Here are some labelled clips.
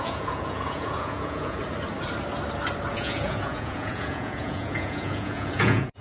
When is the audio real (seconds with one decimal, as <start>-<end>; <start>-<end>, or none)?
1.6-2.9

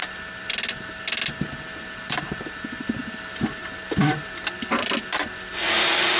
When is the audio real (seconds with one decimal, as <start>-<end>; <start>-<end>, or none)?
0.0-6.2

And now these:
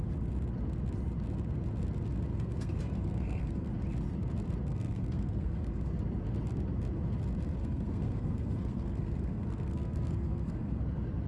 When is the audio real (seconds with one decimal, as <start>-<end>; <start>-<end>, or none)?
0.0-2.3; 3.7-4.7; 5.9-7.6; 10.8-11.3

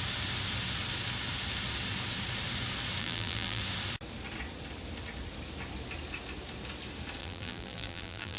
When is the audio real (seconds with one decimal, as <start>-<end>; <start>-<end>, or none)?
0.0-3.0; 3.6-7.2

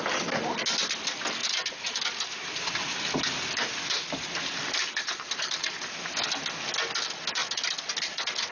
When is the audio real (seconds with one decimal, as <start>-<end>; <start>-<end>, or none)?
0.0-1.4; 6.1-7.4

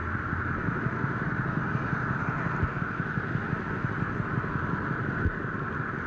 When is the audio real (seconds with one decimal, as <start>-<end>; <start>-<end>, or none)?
0.0-6.1

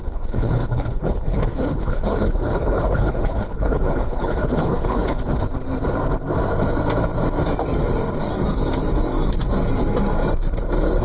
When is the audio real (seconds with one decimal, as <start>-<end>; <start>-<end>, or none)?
5.2-11.0